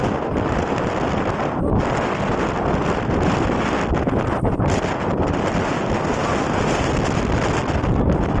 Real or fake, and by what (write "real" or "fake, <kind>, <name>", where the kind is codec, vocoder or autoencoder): real